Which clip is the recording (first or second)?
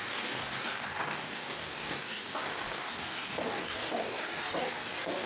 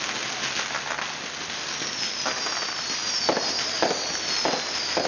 second